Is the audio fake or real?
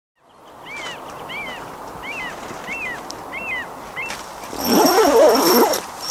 real